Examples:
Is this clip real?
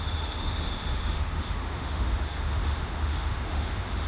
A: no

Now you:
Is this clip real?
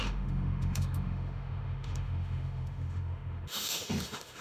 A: no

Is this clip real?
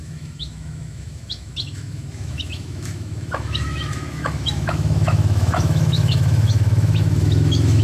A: no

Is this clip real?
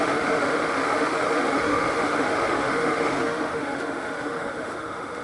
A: no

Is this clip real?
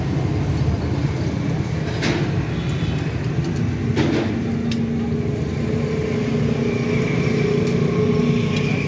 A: yes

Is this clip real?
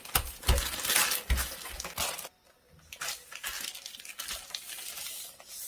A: yes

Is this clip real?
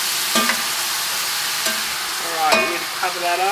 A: yes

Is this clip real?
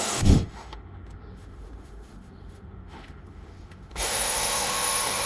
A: no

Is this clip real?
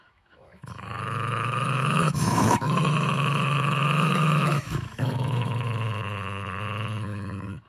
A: no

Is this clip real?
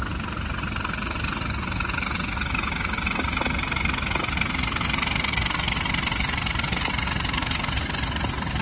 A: yes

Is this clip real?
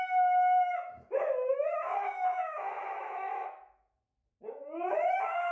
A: no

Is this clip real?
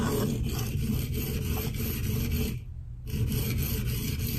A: yes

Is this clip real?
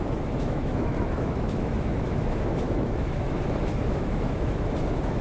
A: no